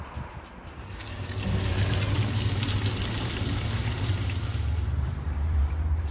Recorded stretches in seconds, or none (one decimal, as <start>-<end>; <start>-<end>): none